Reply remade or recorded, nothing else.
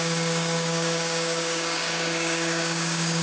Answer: remade